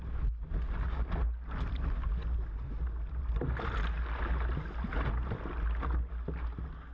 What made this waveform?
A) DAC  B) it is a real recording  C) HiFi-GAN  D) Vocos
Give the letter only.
B